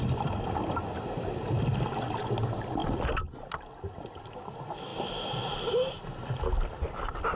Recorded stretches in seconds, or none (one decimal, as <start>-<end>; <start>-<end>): 0.0-7.3